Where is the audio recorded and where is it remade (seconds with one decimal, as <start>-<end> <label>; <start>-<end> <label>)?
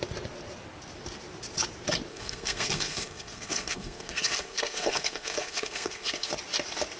0.0-2.1 recorded; 2.1-6.3 remade; 6.3-7.0 recorded